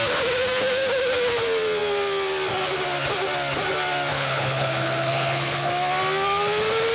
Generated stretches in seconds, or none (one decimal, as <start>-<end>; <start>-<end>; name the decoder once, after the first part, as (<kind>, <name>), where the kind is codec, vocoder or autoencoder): 4.1-5.7 (codec, HILCodec)